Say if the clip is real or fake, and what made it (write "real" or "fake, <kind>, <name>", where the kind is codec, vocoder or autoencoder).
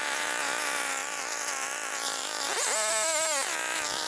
real